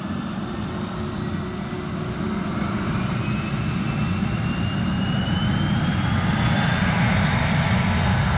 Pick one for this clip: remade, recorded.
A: recorded